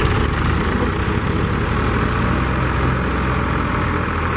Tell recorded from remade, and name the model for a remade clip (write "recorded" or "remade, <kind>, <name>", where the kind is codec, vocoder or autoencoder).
recorded